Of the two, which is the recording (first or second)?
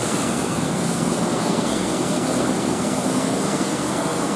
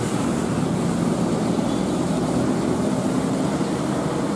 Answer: second